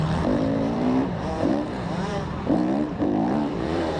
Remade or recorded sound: remade